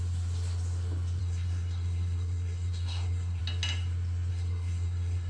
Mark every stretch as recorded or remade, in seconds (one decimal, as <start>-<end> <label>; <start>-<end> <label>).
0.0-1.2 recorded; 1.2-3.4 remade; 3.4-4.3 recorded; 4.3-5.3 remade